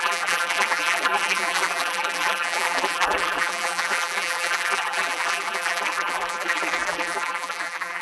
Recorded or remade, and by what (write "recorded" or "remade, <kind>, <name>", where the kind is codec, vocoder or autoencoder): remade, vocoder, BigVGAN v2